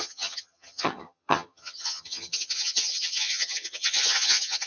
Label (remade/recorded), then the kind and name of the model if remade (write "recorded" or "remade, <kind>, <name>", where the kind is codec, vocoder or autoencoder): remade, vocoder, HiFi-GAN